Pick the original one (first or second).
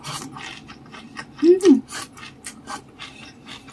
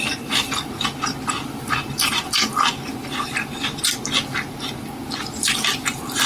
first